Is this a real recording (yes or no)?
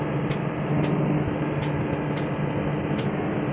yes